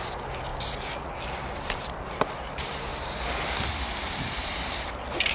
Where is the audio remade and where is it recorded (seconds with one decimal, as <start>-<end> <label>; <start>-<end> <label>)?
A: 0.0-0.5 remade; 0.5-1.2 recorded; 1.2-2.9 remade; 2.9-4.3 recorded; 4.3-5.3 remade